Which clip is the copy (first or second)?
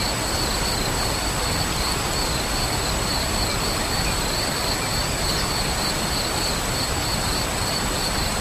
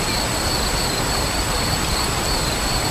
second